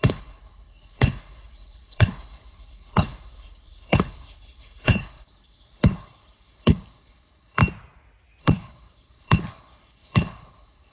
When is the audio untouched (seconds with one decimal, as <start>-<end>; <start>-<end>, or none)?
7.6-8.4